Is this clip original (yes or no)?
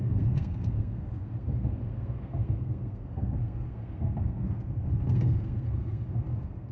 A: no